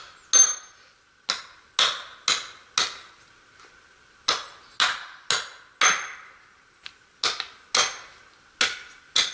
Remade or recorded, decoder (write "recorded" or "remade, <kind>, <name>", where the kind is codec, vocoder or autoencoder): recorded